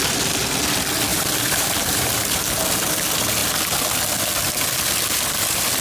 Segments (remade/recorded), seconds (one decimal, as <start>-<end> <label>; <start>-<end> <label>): 0.0-1.1 recorded; 1.1-2.4 remade; 2.4-5.8 recorded